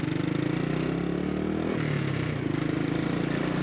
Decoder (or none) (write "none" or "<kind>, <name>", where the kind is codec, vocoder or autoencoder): none